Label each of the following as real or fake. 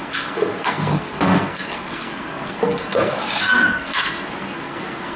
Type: fake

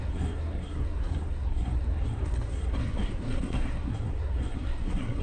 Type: fake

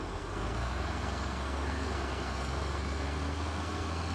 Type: fake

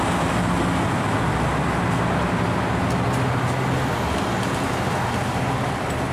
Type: real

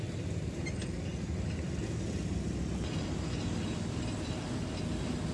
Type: real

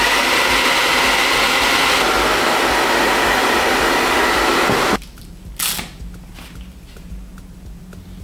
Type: real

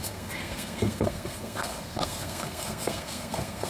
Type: fake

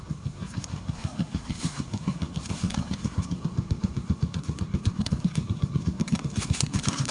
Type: fake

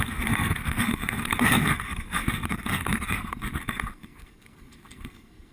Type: fake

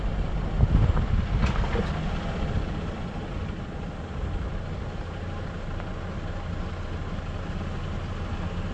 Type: real